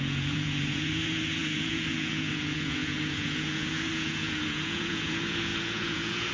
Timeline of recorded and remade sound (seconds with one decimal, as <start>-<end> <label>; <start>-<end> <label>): 0.0-6.3 remade